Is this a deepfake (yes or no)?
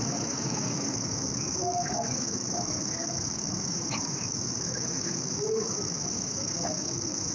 yes